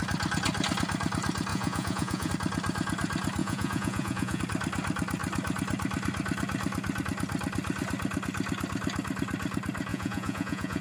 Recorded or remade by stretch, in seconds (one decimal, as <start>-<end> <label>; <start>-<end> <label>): 0.0-1.5 recorded; 1.5-2.3 remade; 2.3-3.4 recorded; 3.4-4.4 remade; 4.4-9.9 recorded; 9.9-10.8 remade